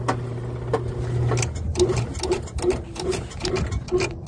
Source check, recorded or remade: recorded